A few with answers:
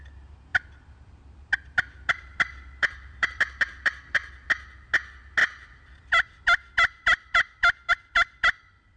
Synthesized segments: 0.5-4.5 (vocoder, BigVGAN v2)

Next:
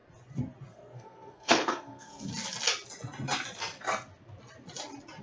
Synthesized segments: 0.7-2.3 (codec, SNAC)

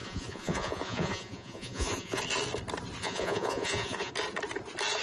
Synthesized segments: 0.0-2.2 (vocoder, Vocos); 3.0-4.1

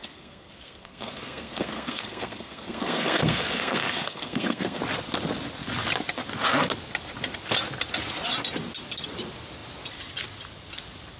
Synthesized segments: 0.0-4.8 (codec, SNAC)